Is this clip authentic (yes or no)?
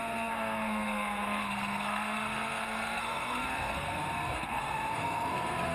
no